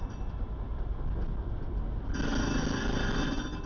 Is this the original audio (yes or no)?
yes